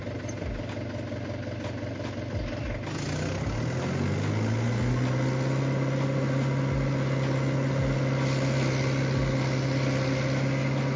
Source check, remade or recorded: recorded